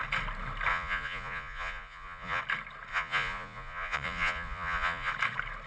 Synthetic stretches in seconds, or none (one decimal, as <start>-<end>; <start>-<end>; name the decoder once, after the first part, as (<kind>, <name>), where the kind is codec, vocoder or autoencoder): 0.7-2.4 (vocoder, Vocos); 2.9-5.1